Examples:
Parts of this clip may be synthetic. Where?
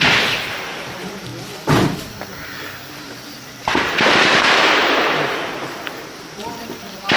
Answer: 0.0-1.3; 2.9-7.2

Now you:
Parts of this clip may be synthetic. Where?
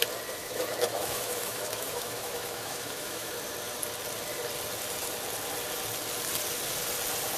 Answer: 0.4-3.3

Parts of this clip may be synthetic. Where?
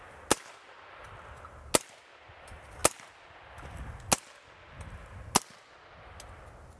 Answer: none